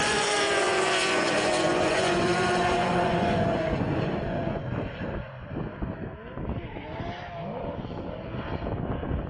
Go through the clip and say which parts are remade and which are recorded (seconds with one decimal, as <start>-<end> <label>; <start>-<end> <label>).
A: 0.0-4.6 remade; 4.6-9.3 recorded